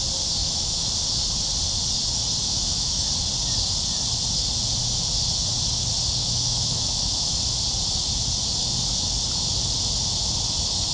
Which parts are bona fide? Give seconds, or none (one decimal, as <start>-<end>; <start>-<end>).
0.0-0.4; 0.9-2.4; 3.1-6.2; 7.4-10.9